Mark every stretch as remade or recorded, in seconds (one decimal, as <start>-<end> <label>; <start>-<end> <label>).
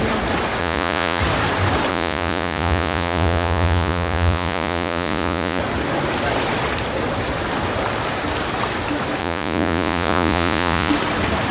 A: 0.0-0.6 recorded; 0.6-1.2 remade; 1.2-1.9 recorded; 1.9-5.6 remade; 5.6-9.2 recorded; 9.2-10.9 remade; 10.9-11.5 recorded